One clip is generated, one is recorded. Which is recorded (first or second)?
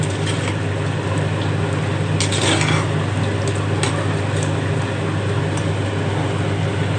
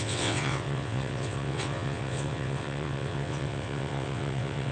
first